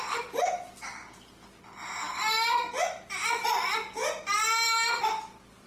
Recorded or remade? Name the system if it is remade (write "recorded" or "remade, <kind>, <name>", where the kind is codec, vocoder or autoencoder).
recorded